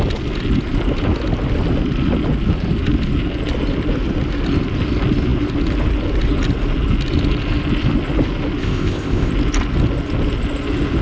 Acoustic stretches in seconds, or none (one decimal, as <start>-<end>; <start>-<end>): 0.0-8.6; 9.3-11.0